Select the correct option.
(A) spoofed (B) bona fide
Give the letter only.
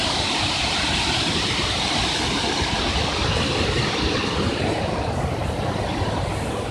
A